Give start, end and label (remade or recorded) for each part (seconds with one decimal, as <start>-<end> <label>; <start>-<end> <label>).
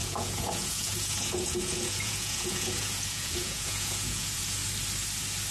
0.0-4.6 remade; 4.6-5.5 recorded